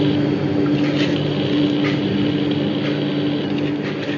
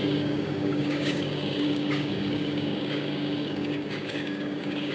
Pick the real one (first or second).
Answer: first